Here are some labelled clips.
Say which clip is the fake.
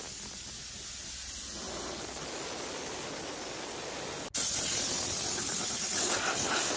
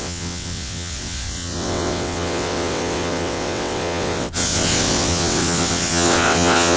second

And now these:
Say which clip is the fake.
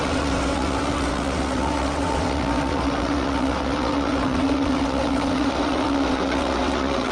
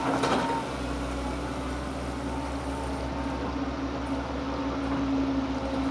first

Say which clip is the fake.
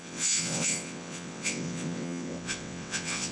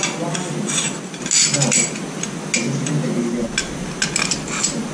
first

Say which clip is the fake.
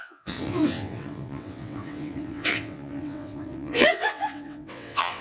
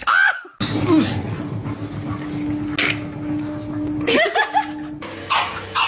first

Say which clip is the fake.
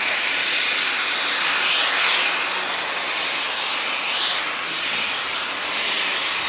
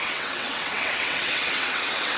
second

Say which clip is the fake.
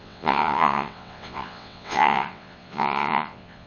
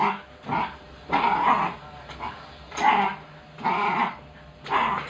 first